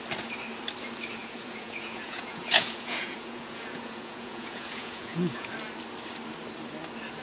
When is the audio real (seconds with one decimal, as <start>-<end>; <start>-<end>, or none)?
0.0-1.2; 5.5-7.2